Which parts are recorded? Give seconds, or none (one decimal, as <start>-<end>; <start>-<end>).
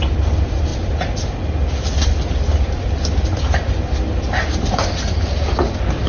0.0-6.1